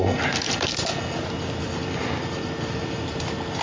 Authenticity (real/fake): real